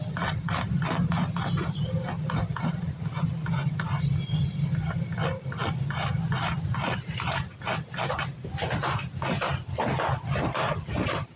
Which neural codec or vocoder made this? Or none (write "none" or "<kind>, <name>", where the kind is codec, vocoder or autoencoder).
none